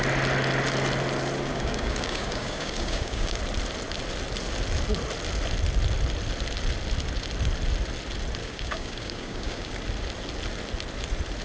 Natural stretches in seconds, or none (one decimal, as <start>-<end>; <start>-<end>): 0.0-1.5; 3.4-8.4; 9.7-11.4